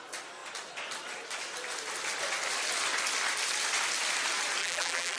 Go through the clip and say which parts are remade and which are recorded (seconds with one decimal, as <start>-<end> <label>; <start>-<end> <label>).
0.0-4.6 recorded; 4.6-5.2 remade